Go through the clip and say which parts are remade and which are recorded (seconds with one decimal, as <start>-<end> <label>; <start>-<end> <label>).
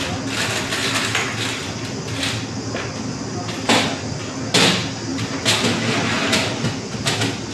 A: 0.0-7.5 recorded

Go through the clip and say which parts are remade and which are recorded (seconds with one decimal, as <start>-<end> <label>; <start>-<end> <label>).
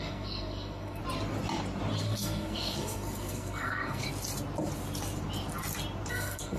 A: 0.0-1.0 remade; 1.0-2.0 recorded; 2.0-4.0 remade; 4.0-6.1 recorded; 6.1-6.6 remade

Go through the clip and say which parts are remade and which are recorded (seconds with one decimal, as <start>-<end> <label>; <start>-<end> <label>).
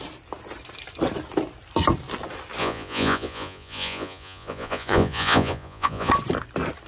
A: 0.0-2.6 recorded; 2.6-6.1 remade; 6.1-6.9 recorded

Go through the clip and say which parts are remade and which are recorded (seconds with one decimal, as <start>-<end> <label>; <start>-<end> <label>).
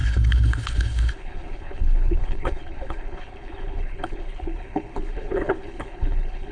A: 0.0-6.5 remade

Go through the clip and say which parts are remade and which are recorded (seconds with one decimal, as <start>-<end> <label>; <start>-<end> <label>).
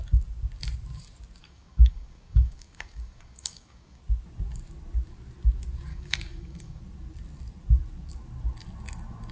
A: 0.0-1.4 recorded; 1.4-4.0 remade; 4.0-5.9 recorded; 5.9-6.8 remade; 6.8-9.3 recorded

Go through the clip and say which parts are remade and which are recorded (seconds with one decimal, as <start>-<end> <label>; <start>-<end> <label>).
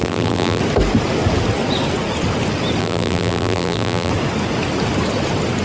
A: 0.0-0.6 remade; 0.6-2.8 recorded; 2.8-4.1 remade; 4.1-5.6 recorded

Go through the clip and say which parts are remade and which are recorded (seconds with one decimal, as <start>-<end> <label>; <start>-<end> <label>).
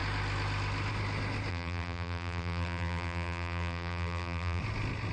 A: 0.0-1.5 recorded; 1.5-4.6 remade; 4.6-5.1 recorded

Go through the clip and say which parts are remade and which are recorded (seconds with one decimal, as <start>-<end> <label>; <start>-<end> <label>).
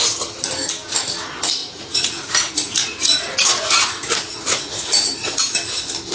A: 0.0-1.6 recorded; 1.6-5.3 remade; 5.3-6.1 recorded